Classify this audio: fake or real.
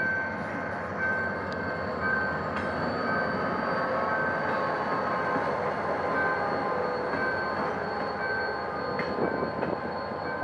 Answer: real